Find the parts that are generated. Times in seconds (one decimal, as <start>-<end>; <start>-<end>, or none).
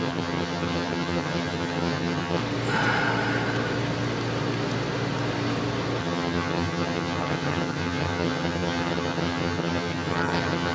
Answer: 0.0-2.4; 6.0-10.7